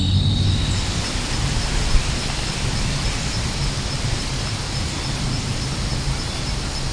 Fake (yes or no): no